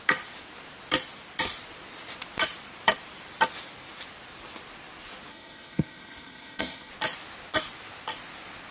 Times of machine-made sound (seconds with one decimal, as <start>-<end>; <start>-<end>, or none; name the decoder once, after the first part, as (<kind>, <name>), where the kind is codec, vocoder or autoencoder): 5.3-6.9 (codec, SNAC)